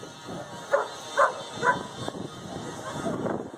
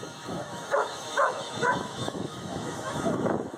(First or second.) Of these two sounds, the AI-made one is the second